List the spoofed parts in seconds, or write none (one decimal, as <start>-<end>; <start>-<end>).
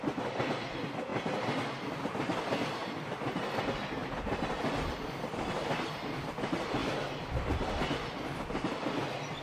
1.1-2.0; 2.8-3.6